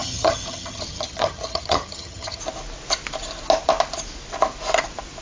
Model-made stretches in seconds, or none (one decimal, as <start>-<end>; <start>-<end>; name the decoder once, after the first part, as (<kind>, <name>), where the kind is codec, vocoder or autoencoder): 0.0-2.4 (vocoder, HiFi-GAN)